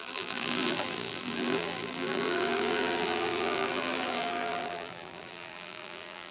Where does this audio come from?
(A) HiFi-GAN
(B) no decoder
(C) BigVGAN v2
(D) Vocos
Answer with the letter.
C